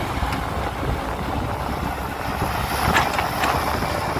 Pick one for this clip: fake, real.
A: real